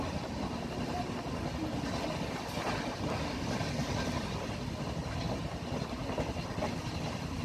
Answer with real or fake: real